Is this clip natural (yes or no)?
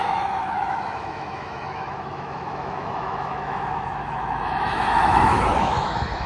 no